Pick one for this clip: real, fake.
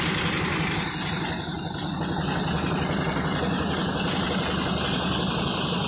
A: real